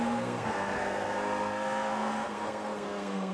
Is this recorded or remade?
remade